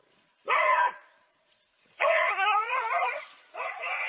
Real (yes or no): no